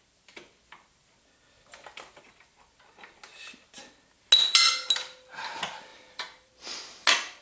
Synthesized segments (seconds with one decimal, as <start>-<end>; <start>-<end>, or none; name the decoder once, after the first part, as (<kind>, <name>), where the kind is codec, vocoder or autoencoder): 5.9-6.5 (vocoder, BigVGAN v2)